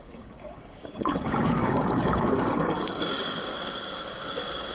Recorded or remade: remade